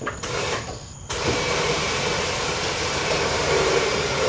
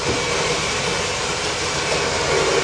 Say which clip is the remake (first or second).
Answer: first